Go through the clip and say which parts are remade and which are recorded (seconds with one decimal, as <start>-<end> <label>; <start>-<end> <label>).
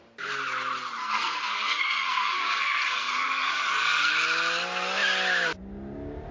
0.0-1.0 recorded; 1.0-4.1 remade; 4.1-6.3 recorded